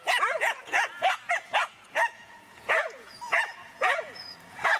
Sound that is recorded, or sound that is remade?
remade